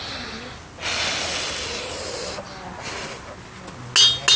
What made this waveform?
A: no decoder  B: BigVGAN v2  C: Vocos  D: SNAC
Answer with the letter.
A